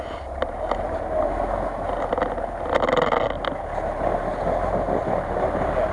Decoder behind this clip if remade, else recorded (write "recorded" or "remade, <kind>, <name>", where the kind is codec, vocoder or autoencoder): recorded